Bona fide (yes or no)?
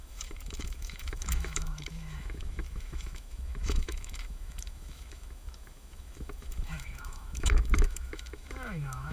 no